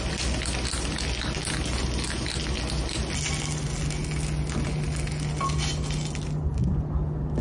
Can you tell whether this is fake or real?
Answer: real